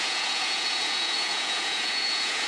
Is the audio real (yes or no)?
no